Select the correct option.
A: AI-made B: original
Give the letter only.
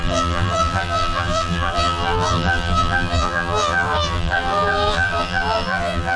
A